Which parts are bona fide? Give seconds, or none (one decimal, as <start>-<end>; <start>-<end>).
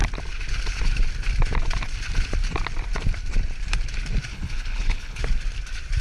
0.0-4.3; 5.2-6.0